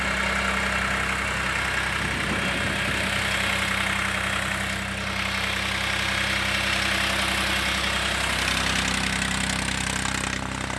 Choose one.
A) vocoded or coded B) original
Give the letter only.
B